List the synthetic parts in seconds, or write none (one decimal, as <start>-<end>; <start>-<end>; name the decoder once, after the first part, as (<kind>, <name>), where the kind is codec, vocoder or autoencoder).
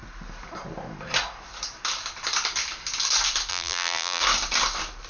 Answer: 3.5-4.2 (vocoder, BigVGAN v2)